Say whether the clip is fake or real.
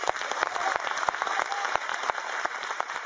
fake